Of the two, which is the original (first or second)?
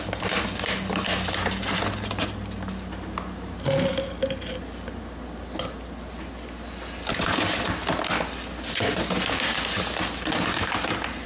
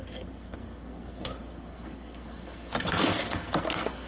first